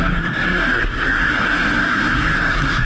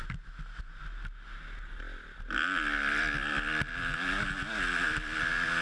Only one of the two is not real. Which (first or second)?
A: first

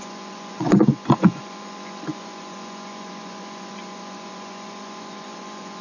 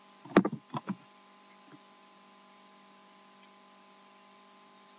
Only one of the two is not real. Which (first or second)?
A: first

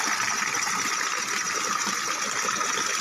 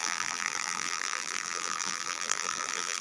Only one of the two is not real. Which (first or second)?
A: second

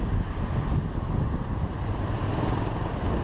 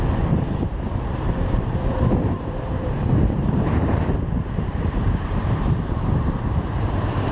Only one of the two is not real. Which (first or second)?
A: second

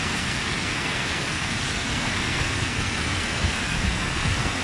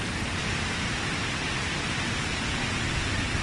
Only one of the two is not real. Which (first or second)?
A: first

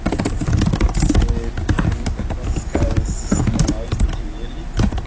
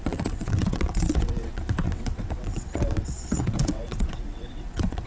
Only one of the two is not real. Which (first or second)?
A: second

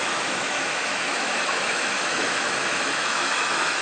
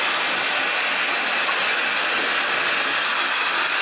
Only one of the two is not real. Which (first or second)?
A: first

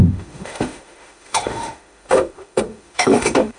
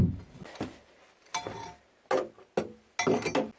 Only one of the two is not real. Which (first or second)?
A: first